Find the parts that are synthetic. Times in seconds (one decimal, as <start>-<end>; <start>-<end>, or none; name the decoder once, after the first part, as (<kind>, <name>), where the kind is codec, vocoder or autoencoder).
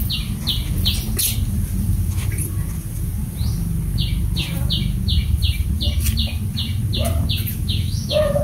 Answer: 7.5-8.4 (autoencoder, DAC-VAE)